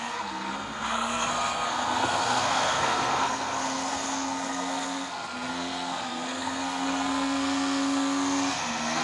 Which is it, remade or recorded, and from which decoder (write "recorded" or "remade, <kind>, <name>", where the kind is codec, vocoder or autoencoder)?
remade, codec, SNAC